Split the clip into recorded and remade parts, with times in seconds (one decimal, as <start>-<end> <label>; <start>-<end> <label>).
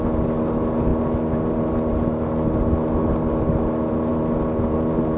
0.0-5.2 recorded